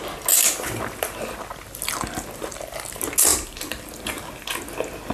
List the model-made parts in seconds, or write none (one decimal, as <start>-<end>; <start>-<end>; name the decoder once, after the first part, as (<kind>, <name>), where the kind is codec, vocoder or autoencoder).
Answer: 0.4-1.4 (vocoder, BigVGAN v2); 3.3-4.6